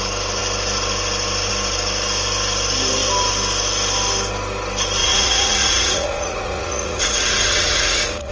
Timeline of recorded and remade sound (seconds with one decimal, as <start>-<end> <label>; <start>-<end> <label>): 0.0-5.0 recorded; 5.0-8.3 remade